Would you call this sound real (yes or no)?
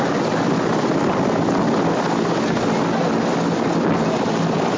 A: yes